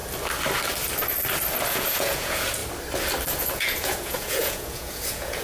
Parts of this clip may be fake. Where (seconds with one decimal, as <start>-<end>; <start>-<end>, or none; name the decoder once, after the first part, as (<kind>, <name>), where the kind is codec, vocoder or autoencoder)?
1.7-2.6 (vocoder, Vocos); 3.3-5.4